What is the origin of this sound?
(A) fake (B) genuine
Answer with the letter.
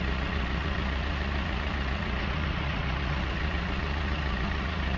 A